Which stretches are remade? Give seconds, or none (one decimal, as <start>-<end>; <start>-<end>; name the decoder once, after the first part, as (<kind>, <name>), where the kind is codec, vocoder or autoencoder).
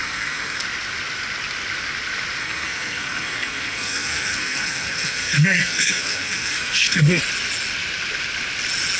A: 0.0-0.6 (codec, SNAC); 2.4-7.2